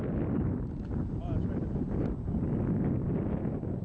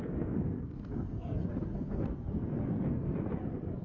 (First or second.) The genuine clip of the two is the first